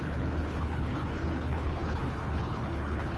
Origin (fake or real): fake